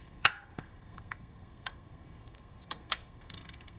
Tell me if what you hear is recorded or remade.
remade